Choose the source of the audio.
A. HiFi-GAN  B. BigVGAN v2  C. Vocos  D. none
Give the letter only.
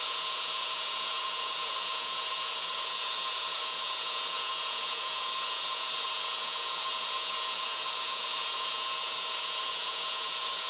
C